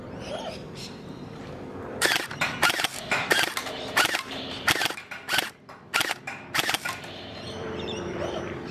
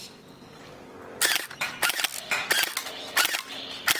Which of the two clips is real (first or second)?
second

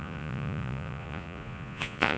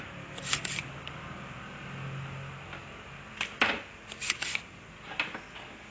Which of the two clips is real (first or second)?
second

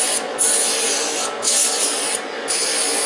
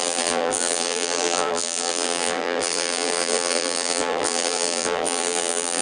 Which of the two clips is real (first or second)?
first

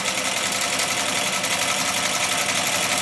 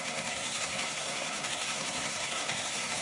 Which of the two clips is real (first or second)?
first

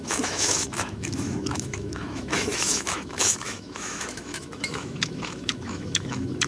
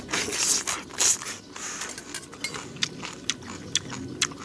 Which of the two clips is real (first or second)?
second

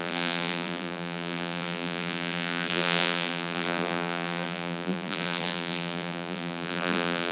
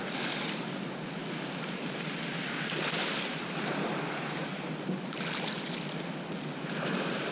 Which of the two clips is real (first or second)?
second